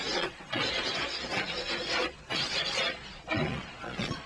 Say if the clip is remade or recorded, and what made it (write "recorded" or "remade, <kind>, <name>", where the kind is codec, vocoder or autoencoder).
remade, vocoder, Vocos